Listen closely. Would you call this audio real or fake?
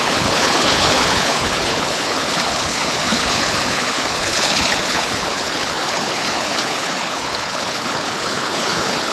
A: fake